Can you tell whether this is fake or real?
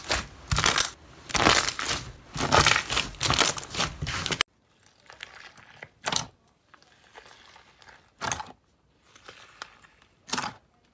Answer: real